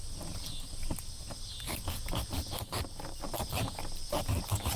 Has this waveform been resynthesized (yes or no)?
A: no